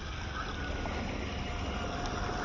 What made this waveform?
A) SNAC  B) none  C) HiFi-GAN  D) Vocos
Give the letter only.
B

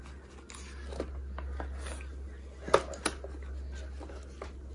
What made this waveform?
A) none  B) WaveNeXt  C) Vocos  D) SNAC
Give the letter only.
A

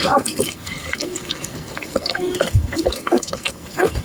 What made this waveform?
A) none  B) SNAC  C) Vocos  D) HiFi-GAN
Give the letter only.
B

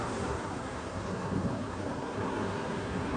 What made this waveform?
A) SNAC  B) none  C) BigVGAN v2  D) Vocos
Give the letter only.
A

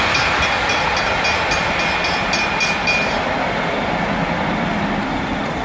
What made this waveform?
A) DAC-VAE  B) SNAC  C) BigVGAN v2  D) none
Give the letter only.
D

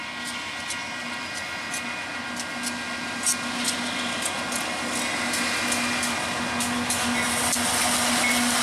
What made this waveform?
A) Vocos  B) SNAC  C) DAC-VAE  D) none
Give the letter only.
D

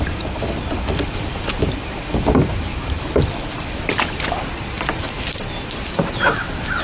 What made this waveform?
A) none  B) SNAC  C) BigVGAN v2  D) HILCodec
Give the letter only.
A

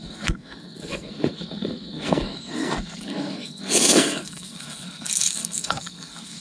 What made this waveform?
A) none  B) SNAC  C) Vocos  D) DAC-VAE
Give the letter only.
B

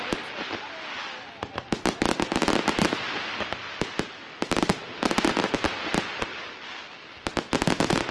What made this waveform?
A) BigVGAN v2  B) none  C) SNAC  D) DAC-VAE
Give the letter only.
B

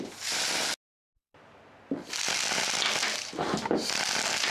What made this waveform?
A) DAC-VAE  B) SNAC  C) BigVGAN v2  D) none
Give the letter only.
D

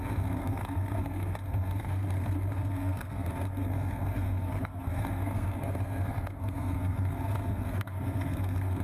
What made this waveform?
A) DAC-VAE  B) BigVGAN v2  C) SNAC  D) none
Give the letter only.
C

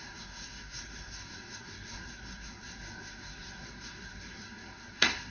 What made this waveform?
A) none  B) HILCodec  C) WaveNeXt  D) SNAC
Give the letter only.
D